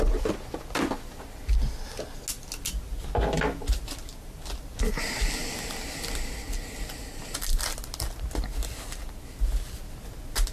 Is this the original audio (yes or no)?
yes